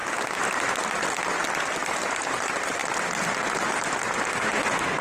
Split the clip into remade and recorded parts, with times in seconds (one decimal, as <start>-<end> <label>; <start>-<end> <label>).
0.0-1.9 recorded; 1.9-2.8 remade; 2.8-3.7 recorded; 3.7-5.0 remade